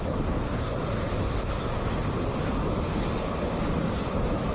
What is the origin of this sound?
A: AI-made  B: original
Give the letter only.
B